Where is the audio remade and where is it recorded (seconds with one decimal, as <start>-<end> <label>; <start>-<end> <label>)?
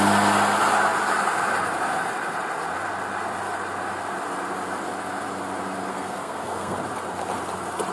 0.0-5.9 recorded; 5.9-6.8 remade; 6.8-7.9 recorded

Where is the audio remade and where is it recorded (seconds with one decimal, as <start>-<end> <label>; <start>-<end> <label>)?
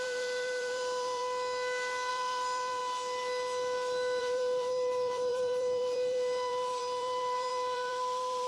0.0-1.2 remade; 1.2-2.1 recorded; 2.1-2.8 remade; 2.8-4.2 recorded; 4.2-8.5 remade